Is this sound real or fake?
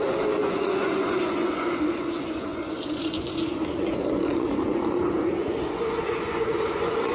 fake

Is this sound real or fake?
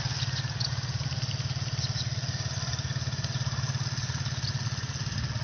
real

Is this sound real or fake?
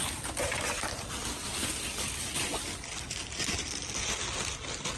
real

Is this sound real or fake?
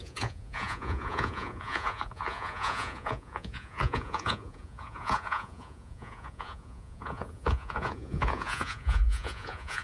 fake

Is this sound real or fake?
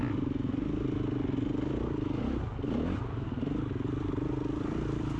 real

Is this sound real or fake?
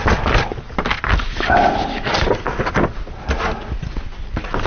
real